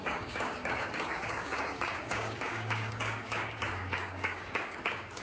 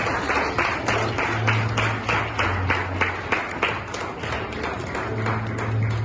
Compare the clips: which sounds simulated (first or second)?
first